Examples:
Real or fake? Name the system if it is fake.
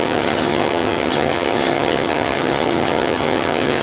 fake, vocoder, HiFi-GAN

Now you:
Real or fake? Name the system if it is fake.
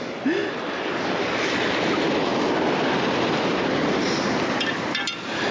real